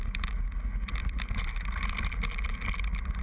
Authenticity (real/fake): real